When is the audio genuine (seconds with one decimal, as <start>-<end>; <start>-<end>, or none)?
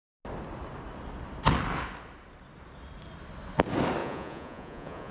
0.0-4.0